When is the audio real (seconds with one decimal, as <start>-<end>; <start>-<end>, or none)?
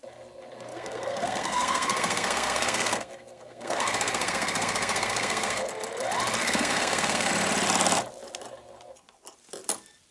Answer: 0.0-0.7; 5.7-6.4; 7.3-10.1